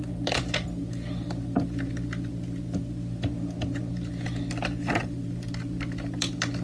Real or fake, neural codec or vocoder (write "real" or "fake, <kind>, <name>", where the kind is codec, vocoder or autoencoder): real